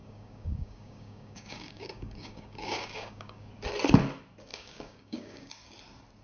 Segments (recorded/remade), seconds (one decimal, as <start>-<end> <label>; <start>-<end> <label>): 0.0-3.5 remade; 3.5-4.5 recorded; 4.5-5.5 remade; 5.5-6.2 recorded